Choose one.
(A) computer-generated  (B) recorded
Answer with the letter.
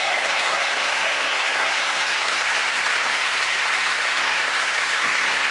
A